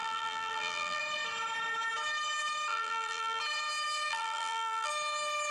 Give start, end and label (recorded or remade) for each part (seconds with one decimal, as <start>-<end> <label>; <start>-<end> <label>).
0.0-1.0 remade; 1.0-2.7 recorded; 2.7-3.4 remade; 3.4-4.1 recorded; 4.1-4.9 remade; 4.9-5.5 recorded

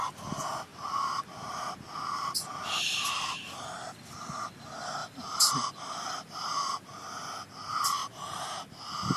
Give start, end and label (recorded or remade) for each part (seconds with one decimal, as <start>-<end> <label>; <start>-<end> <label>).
0.0-5.0 recorded; 5.0-7.5 remade; 7.5-8.0 recorded; 8.0-8.5 remade; 8.5-9.2 recorded

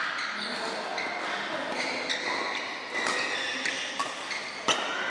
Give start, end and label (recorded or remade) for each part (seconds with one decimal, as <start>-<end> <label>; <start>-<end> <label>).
0.0-5.1 recorded

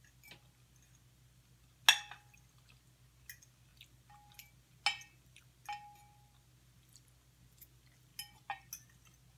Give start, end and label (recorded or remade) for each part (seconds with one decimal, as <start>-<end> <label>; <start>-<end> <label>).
0.0-9.4 recorded

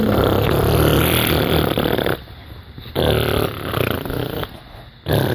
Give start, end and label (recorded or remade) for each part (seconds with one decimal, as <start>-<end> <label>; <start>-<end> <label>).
0.0-0.9 recorded; 0.9-3.7 remade; 3.7-5.3 recorded

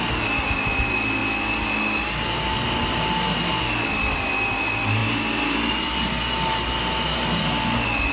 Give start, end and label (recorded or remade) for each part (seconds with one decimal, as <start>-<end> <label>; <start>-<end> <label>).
0.0-8.1 recorded